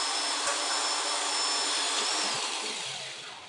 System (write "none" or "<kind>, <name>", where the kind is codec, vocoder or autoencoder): none